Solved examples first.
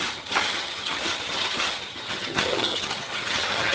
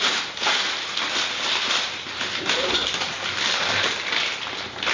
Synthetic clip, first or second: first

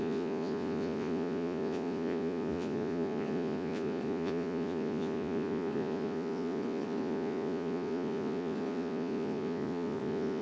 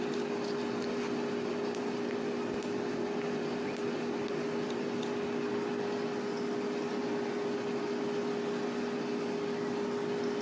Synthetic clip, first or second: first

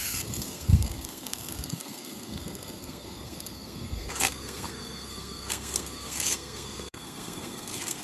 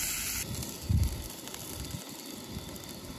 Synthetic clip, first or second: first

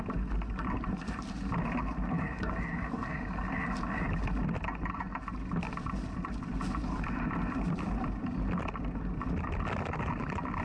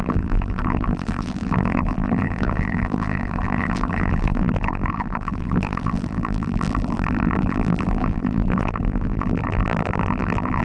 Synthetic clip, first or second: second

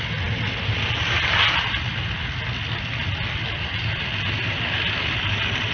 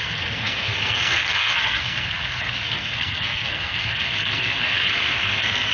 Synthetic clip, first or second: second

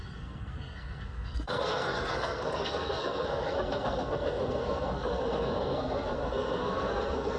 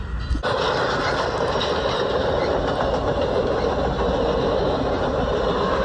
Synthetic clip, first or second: first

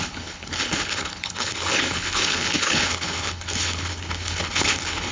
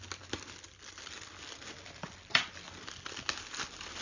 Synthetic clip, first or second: first